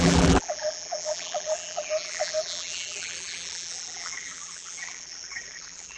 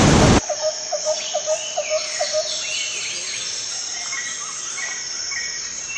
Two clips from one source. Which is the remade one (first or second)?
first